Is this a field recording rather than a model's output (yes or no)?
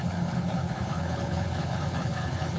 no